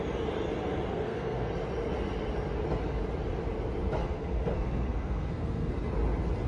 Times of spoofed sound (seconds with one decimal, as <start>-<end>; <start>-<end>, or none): 0.9-1.5; 4.0-5.7